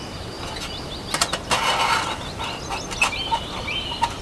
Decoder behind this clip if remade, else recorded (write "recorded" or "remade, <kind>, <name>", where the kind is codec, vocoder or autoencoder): recorded